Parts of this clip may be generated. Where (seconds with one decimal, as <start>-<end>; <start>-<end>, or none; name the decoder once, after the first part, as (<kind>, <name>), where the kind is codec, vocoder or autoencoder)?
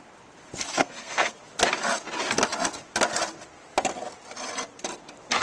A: 0.8-1.4 (codec, SNAC)